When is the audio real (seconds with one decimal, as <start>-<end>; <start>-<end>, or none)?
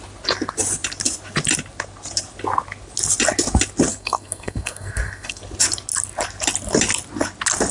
0.0-3.9; 5.4-7.7